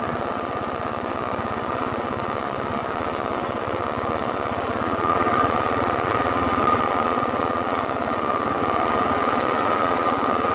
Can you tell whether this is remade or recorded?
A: remade